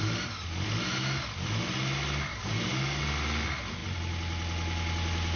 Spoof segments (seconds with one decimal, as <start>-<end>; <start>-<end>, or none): 2.3-3.0